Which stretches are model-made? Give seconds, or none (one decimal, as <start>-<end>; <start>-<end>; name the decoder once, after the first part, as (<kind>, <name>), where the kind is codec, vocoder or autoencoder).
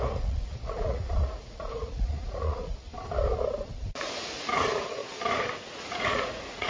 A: 0.0-2.7 (vocoder, Vocos); 3.9-5.0; 5.6-6.7